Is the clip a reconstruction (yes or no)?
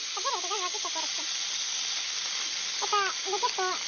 no